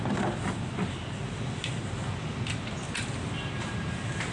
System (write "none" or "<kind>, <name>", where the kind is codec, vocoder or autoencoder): none